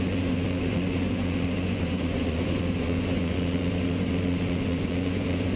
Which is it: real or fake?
fake